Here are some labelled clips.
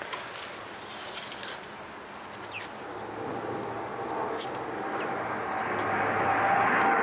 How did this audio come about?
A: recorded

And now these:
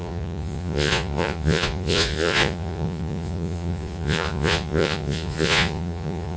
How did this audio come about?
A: remade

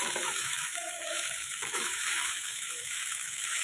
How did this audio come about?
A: remade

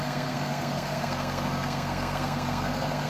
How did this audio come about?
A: remade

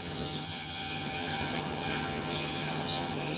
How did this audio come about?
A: remade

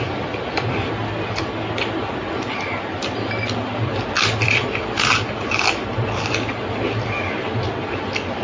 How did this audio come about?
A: recorded